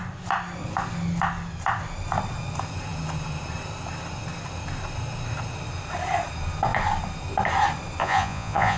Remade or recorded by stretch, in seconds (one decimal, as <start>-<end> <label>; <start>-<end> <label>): 0.0-8.0 recorded; 8.0-8.8 remade